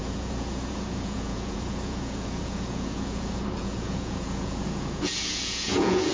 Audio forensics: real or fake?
fake